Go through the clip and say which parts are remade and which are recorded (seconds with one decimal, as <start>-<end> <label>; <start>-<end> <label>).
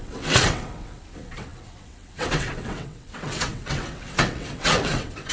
0.0-5.3 remade